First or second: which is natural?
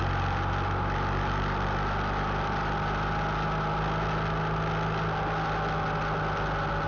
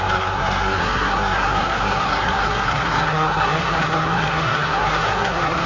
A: first